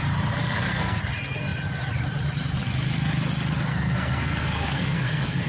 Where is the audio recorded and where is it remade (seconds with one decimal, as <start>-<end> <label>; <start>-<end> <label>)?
0.0-0.4 recorded; 0.4-1.0 remade; 1.0-3.7 recorded; 3.7-5.5 remade